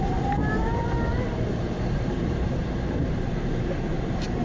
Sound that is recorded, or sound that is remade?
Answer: remade